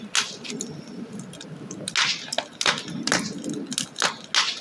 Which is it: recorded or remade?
recorded